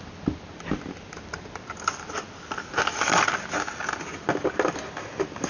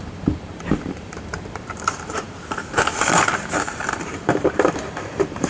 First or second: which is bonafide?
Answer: first